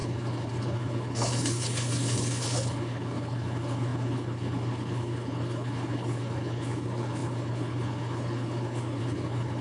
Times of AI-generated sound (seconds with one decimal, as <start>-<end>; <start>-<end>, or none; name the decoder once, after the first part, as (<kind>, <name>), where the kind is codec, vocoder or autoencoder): 0.0-9.6 (codec, HILCodec)